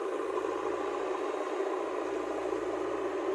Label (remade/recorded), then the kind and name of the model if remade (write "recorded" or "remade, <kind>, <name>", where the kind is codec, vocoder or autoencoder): recorded